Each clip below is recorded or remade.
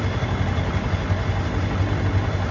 recorded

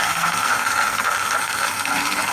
remade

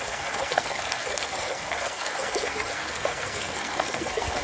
remade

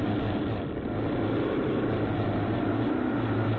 recorded